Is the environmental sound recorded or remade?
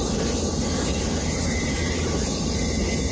recorded